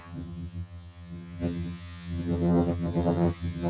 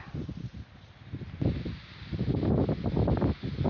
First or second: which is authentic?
second